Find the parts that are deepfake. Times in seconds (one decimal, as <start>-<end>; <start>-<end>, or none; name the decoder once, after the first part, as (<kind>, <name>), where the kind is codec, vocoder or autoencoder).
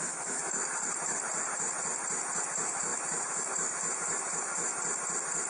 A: 0.0-0.8 (autoencoder, DAC-VAE); 2.4-4.7